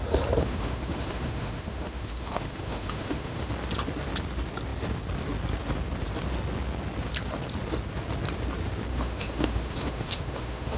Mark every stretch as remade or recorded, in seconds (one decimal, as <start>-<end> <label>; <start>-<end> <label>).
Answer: 0.0-0.4 recorded; 0.4-3.5 remade; 3.5-8.9 recorded; 8.9-10.8 remade